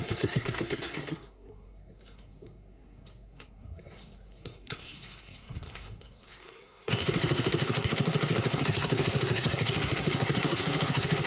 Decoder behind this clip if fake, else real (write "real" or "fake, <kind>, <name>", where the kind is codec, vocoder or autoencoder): fake, codec, SNAC